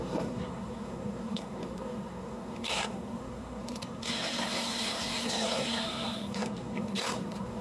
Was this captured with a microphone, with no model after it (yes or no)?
no